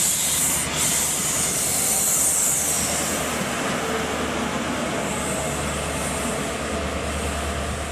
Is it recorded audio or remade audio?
recorded